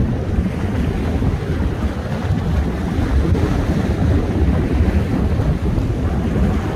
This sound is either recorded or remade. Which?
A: recorded